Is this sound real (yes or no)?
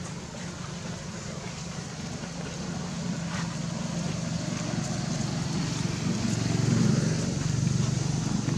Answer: yes